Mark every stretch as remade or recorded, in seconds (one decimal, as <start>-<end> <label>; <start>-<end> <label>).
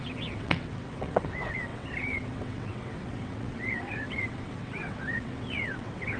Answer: 0.0-6.2 remade